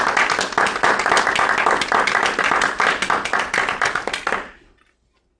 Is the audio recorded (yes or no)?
yes